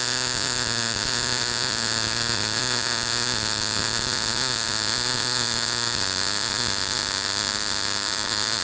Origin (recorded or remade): remade